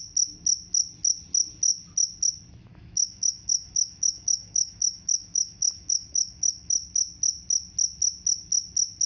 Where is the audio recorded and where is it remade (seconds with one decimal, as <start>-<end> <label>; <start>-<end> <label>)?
0.0-2.7 recorded; 2.7-6.7 remade; 6.7-9.1 recorded